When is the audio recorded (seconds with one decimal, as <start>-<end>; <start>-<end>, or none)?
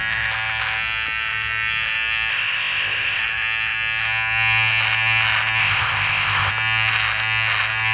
0.0-2.3; 3.2-5.6; 6.5-7.9